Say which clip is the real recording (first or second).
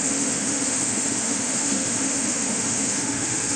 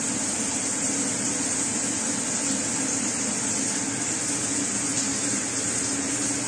second